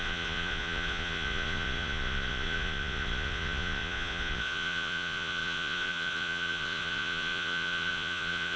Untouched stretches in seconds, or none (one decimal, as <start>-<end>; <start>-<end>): none